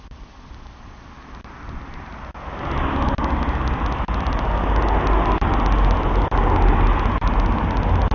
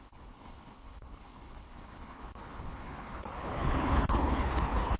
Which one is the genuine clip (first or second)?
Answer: first